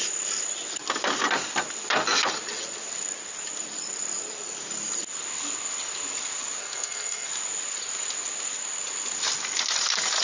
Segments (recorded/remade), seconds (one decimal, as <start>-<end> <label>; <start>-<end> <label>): 0.0-6.6 recorded; 6.6-7.3 remade; 7.3-10.2 recorded